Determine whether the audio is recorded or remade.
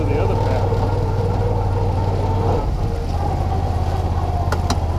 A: recorded